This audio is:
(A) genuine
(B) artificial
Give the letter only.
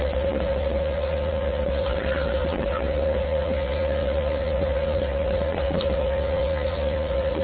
B